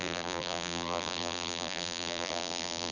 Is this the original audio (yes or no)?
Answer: no